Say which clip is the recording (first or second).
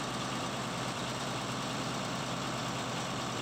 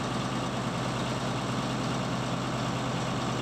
second